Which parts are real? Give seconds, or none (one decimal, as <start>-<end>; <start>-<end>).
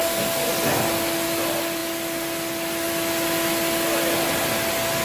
0.0-5.0